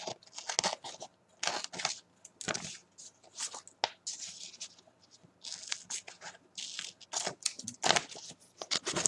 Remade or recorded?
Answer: recorded